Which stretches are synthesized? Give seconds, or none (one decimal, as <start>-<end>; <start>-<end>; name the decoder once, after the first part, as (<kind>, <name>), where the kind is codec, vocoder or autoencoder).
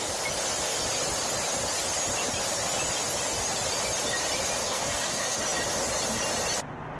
4.6-5.4 (codec, SNAC)